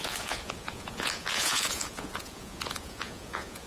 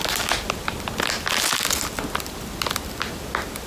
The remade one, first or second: first